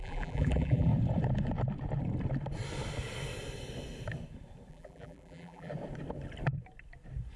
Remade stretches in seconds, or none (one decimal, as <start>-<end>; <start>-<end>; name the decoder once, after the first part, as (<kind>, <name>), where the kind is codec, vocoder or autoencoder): 0.0-0.9 (vocoder, BigVGAN v2); 4.7-5.7